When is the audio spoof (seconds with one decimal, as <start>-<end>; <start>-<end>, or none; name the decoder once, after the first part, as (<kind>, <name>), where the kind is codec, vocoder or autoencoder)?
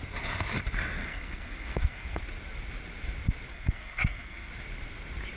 1.0-2.2 (codec, SNAC); 3.5-4.5